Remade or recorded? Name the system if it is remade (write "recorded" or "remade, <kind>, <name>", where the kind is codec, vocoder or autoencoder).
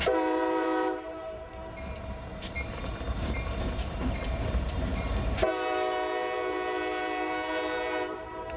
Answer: remade, vocoder, BigVGAN v2